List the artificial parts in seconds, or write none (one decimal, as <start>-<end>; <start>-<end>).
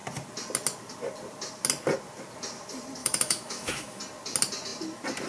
3.0-4.0